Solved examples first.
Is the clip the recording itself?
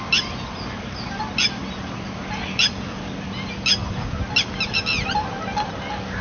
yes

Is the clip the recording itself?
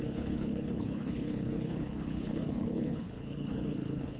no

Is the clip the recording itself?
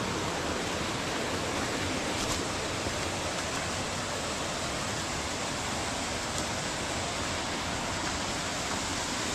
yes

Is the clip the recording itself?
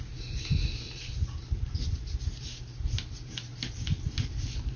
yes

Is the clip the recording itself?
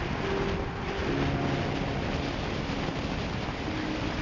yes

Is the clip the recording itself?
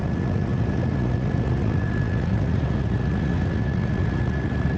no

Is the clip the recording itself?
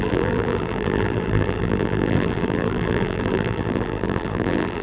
no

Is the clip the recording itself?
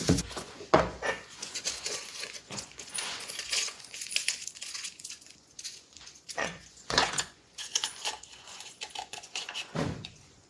no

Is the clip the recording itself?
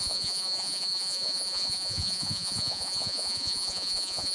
no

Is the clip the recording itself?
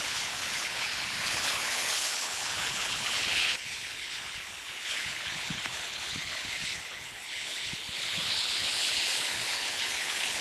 no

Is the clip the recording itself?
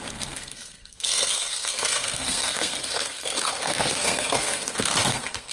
no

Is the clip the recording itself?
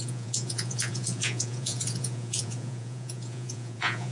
no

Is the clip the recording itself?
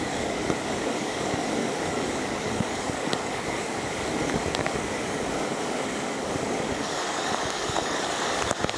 no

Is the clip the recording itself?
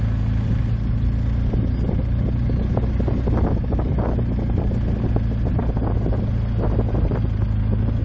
yes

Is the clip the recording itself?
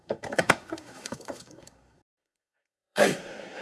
no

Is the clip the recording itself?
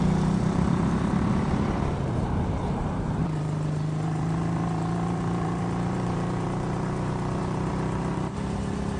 no